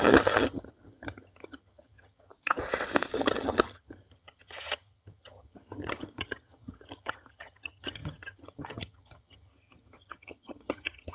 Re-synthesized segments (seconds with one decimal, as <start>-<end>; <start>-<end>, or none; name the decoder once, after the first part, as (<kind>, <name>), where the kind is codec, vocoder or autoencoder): 0.0-2.3 (vocoder, HiFi-GAN); 3.1-11.1